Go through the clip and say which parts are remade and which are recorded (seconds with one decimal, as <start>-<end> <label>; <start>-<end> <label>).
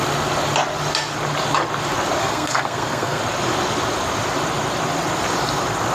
0.0-2.2 recorded; 2.2-3.2 remade; 3.2-5.9 recorded